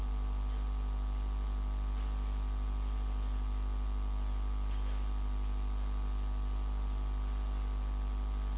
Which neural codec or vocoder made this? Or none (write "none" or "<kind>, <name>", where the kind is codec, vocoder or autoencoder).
none